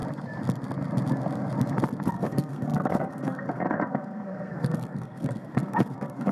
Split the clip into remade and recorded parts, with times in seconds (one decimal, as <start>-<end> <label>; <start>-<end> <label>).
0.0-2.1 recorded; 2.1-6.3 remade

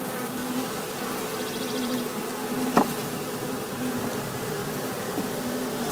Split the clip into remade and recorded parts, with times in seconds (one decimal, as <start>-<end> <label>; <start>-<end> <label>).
0.0-0.4 remade; 0.4-3.9 recorded; 3.9-4.6 remade; 4.6-5.9 recorded

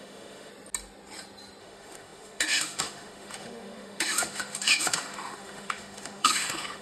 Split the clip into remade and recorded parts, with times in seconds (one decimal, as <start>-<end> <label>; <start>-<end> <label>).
0.0-0.5 remade; 0.5-1.6 recorded; 1.6-6.8 remade